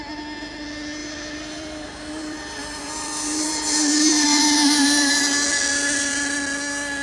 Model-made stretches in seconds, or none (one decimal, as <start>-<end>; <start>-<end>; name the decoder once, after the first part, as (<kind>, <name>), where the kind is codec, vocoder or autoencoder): 1.0-5.2 (vocoder, BigVGAN v2); 5.7-6.3

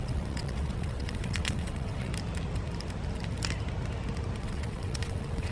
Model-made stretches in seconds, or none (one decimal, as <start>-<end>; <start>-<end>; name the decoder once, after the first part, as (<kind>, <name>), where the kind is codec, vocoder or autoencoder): 0.0-2.1 (vocoder, WaveNeXt); 4.4-5.5

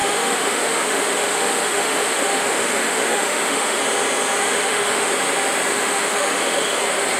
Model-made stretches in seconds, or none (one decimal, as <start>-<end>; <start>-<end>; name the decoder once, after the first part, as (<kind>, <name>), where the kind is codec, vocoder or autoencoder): 0.0-3.8 (autoencoder, DAC-VAE); 4.4-5.1; 5.7-6.8

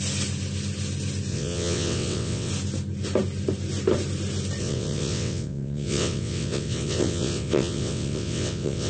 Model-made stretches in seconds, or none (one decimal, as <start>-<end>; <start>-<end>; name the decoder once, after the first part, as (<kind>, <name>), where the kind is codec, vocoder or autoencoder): 1.3-2.5 (vocoder, WaveNeXt); 4.6-8.9

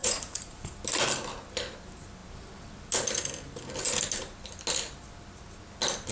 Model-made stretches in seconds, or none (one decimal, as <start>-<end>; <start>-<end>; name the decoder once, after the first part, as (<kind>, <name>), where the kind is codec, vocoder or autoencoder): 0.0-0.7 (vocoder, Vocos)